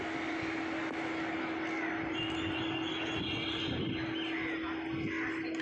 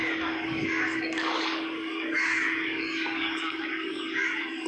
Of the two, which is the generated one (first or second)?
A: second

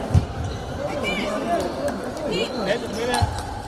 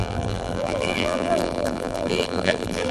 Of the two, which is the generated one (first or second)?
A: second